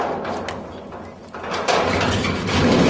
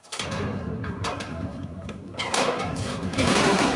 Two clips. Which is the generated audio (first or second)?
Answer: second